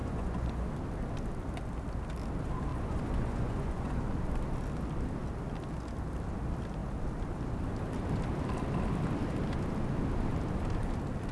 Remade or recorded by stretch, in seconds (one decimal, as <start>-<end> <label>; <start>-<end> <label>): 0.0-0.7 remade; 0.7-2.7 recorded; 2.7-4.0 remade; 4.0-11.3 recorded